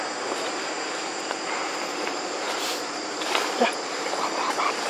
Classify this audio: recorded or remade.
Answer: remade